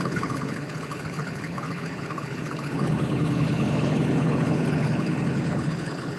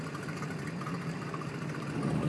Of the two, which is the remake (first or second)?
first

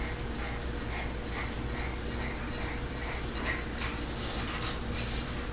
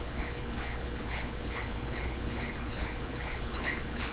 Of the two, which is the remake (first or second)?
second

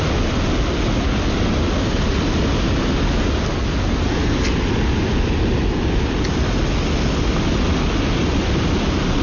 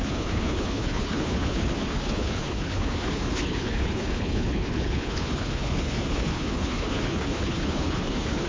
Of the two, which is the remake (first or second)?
second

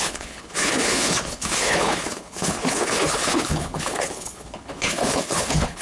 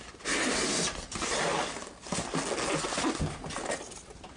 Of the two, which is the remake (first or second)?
first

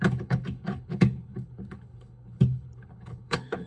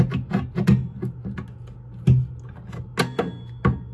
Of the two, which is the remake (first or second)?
first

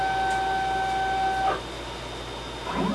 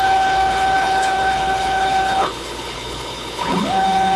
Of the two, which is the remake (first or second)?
second